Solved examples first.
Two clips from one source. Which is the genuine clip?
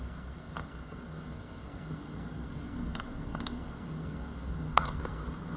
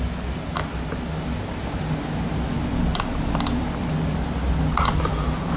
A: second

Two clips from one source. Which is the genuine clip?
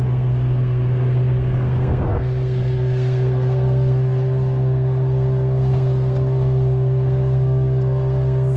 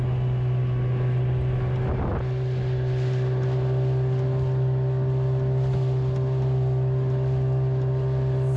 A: second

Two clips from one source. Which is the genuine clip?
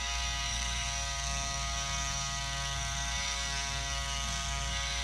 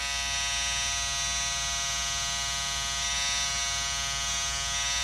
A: second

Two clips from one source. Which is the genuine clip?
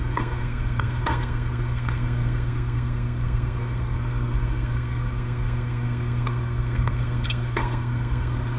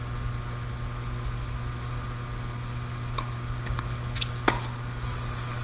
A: second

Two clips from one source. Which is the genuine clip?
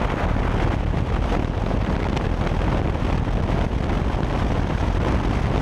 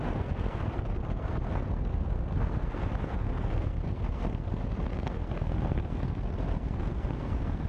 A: first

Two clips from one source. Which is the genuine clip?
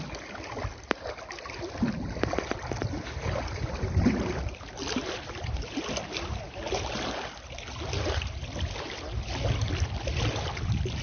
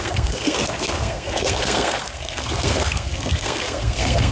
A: first